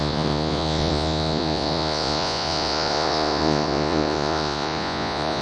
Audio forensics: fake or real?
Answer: fake